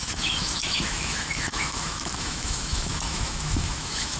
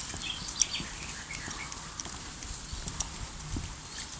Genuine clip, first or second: second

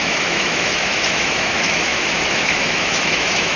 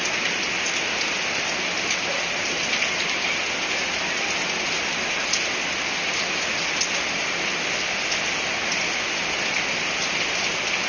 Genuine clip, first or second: second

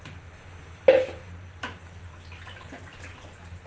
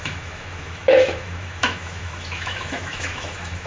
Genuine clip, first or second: first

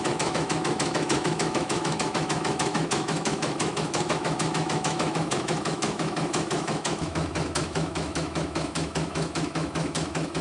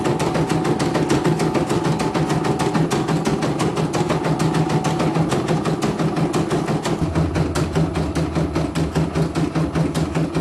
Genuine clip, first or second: second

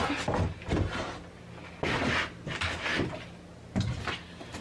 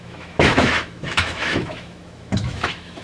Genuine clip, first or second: first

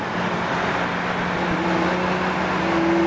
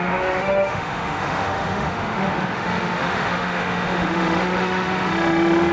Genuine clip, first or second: first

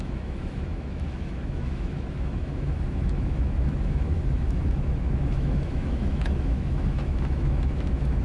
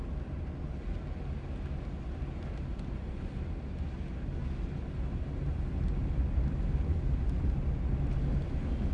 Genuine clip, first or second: second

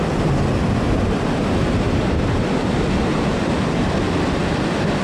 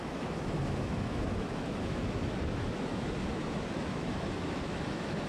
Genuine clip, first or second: first